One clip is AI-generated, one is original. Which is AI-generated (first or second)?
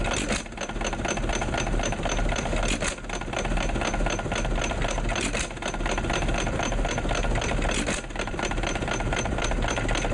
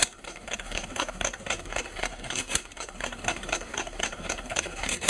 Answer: second